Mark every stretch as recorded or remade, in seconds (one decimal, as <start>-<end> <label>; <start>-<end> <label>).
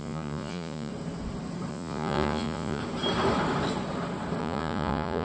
0.0-0.9 remade; 0.9-1.7 recorded; 1.7-2.8 remade; 2.8-4.4 recorded; 4.4-5.2 remade